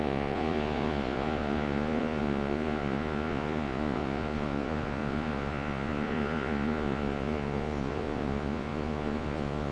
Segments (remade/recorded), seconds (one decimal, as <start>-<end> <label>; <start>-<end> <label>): 0.0-9.7 remade